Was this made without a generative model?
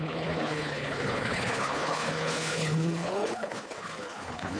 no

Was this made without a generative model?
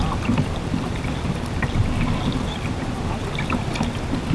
yes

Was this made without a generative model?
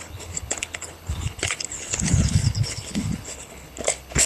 no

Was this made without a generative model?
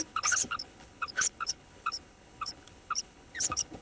no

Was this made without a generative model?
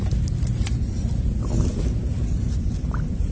yes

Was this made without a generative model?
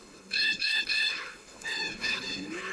no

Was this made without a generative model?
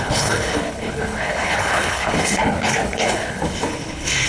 no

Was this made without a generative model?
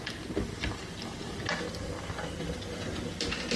yes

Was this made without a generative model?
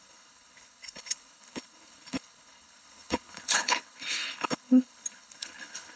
no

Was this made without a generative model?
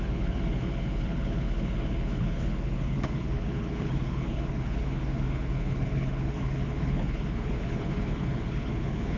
no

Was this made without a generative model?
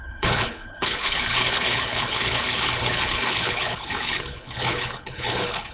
no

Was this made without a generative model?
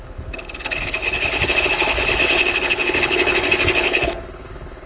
no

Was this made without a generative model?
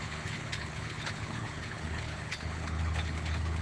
no